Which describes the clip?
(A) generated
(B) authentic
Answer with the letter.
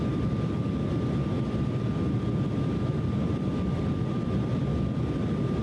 A